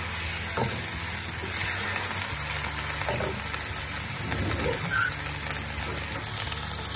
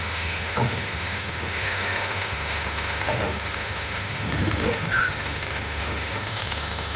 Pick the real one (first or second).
first